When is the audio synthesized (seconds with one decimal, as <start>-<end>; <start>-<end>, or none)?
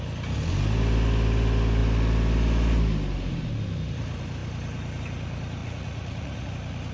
5.6-6.5